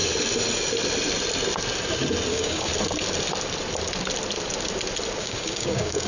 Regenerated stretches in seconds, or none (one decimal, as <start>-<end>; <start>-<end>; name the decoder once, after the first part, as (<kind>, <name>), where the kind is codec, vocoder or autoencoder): 2.3-2.7 (codec, DAC); 5.2-6.1